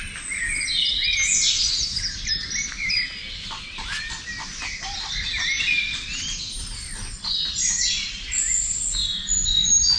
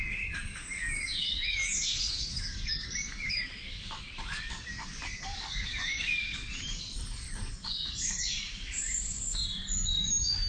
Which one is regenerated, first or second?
second